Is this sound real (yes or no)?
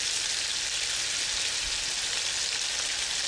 yes